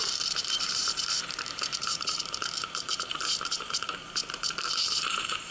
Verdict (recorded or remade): remade